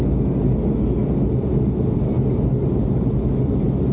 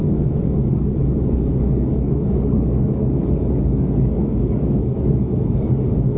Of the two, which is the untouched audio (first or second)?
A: first